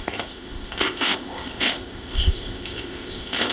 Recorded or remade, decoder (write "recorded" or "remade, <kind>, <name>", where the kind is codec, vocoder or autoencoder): remade, codec, ZipCodec